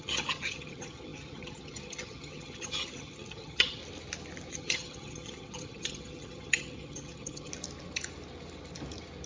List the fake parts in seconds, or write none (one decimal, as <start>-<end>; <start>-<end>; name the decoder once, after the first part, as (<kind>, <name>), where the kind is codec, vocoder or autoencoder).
0.0-3.8 (vocoder, HiFi-GAN); 4.5-7.5